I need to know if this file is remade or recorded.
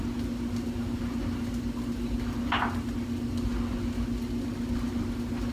recorded